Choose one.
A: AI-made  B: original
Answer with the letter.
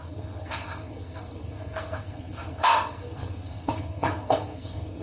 A